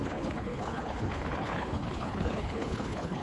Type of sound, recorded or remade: remade